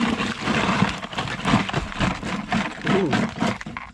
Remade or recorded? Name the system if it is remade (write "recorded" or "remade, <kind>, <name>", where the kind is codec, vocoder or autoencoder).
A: recorded